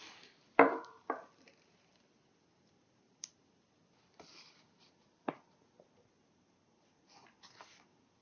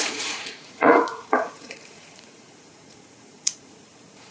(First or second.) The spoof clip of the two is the second